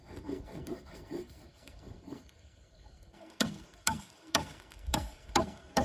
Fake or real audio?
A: fake